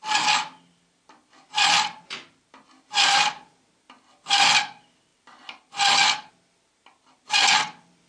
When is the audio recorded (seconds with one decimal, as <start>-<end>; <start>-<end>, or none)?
0.0-8.1